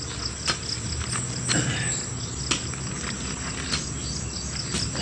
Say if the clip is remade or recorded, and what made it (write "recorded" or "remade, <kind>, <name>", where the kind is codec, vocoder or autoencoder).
recorded